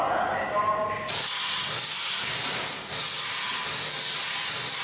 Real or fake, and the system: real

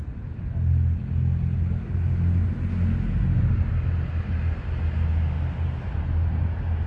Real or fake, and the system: real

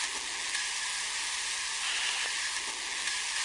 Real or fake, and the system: real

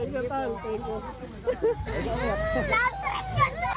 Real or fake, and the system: real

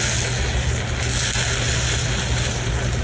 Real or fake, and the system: real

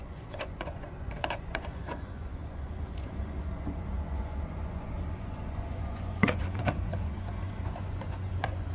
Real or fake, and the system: fake, vocoder, Vocos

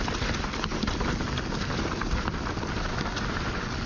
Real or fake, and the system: real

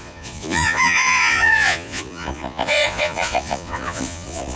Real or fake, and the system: fake, vocoder, Vocos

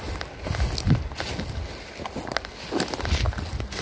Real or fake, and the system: real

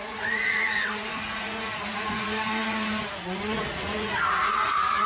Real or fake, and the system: fake, vocoder, Vocos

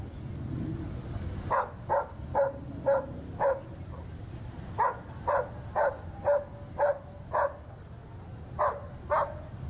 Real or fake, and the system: real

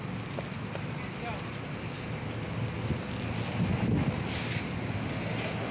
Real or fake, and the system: real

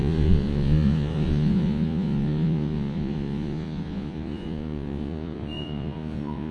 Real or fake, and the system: fake, vocoder, Vocos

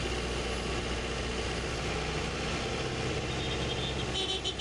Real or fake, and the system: real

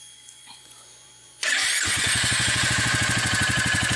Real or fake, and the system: fake, vocoder, Vocos